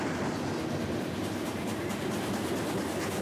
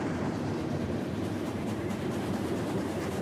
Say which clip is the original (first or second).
first